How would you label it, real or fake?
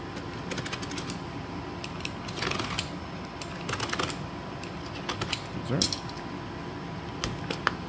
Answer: real